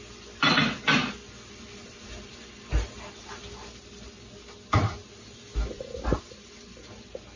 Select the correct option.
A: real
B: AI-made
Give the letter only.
A